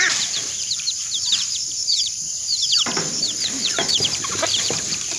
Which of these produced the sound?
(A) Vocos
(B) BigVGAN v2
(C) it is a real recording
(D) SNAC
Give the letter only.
B